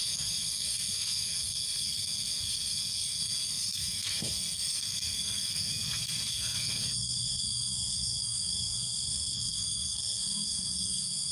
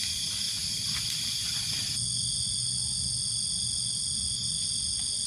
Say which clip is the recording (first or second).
second